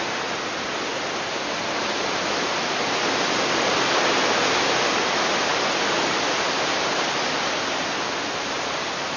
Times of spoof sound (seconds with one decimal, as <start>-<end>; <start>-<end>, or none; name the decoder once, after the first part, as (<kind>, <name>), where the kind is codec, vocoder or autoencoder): none